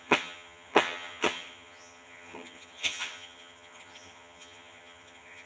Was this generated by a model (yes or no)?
yes